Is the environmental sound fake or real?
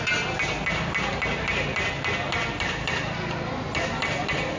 real